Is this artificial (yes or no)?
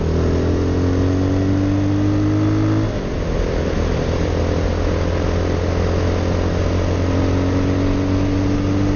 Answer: no